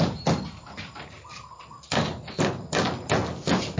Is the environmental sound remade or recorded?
recorded